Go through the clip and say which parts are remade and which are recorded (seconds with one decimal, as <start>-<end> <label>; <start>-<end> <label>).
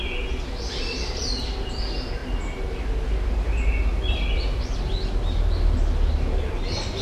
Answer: 0.0-7.0 recorded